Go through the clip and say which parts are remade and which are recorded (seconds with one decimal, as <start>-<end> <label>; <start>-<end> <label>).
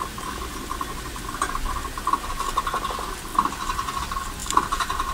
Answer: 0.0-3.3 recorded; 3.3-4.0 remade; 4.0-4.4 recorded; 4.4-5.1 remade